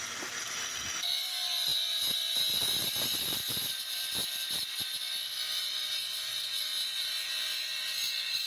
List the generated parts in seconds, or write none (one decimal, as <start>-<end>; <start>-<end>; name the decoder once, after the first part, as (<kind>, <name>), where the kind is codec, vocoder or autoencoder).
none